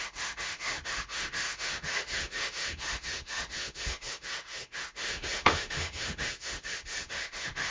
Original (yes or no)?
no